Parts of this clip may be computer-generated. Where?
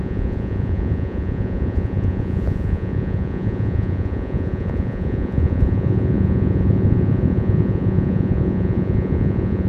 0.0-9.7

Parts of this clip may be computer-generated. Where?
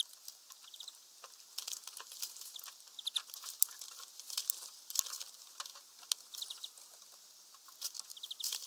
none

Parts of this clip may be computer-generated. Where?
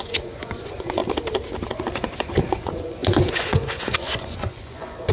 0.0-1.0; 1.9-5.1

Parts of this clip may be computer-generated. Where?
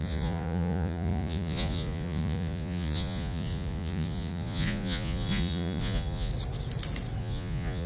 0.0-6.3; 7.2-7.9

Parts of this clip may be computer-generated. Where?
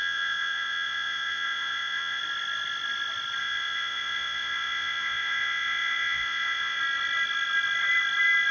0.0-2.2; 3.4-6.8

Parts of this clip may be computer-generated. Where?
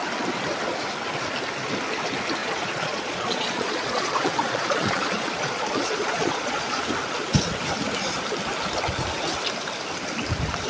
2.4-6.8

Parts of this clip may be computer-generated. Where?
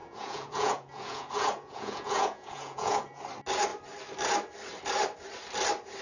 0.0-3.2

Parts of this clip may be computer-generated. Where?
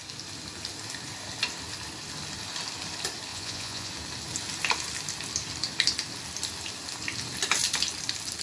3.3-3.9